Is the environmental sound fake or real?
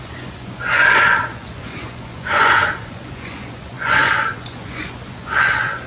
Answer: fake